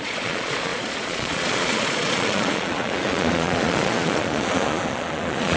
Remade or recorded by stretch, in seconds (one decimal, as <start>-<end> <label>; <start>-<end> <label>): 0.0-5.6 remade